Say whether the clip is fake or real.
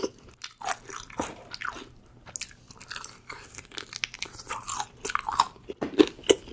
real